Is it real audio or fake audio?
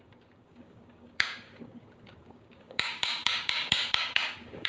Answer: fake